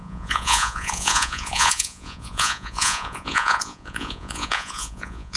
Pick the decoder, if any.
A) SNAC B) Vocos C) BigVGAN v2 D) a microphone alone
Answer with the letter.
B